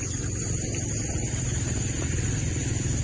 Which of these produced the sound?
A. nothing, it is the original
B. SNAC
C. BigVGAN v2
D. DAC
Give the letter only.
A